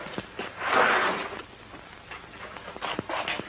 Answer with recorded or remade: recorded